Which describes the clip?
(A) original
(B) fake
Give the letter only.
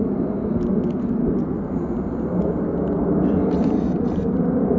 A